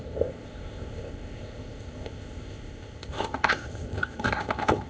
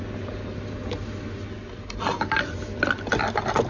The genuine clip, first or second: second